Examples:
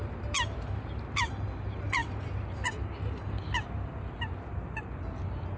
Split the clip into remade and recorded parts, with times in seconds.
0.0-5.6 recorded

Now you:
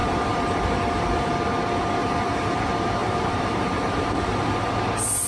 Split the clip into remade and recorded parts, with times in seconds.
0.0-1.3 remade; 1.3-2.0 recorded; 2.0-2.6 remade; 2.6-3.0 recorded; 3.0-4.7 remade; 4.7-5.3 recorded

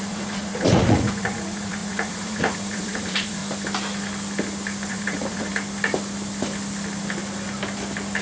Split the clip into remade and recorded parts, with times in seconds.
0.0-3.4 remade; 3.4-4.9 recorded; 4.9-5.5 remade; 5.5-8.2 recorded

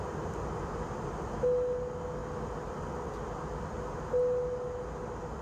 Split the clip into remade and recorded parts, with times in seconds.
0.0-5.4 recorded

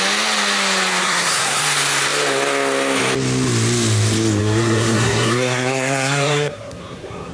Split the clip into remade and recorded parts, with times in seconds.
0.0-1.0 recorded; 1.0-1.6 remade; 1.6-4.4 recorded; 4.4-7.3 remade